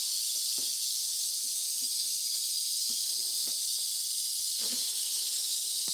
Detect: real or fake real